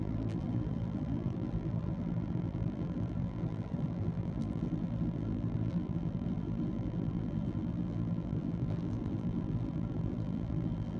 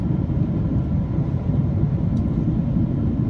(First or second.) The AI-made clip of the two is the first